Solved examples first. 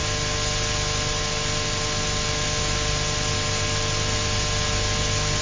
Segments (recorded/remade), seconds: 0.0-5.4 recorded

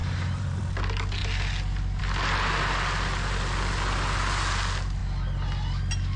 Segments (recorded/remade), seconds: 0.0-0.6 remade; 0.6-6.2 recorded